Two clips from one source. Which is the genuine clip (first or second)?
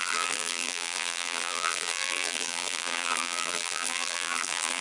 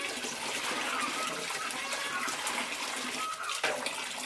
second